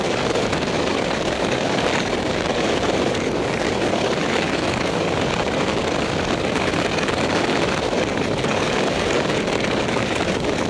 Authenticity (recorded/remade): remade